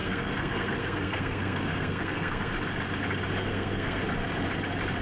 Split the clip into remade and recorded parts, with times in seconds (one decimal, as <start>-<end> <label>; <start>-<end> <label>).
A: 0.0-2.5 remade; 2.5-3.4 recorded; 3.4-4.0 remade; 4.0-5.0 recorded